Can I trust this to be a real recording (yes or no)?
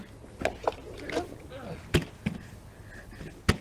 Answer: yes